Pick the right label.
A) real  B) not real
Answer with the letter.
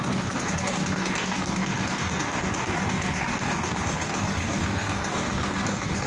B